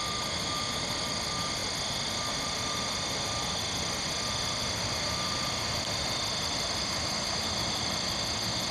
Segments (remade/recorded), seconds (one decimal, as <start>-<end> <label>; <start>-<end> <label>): 0.0-8.7 recorded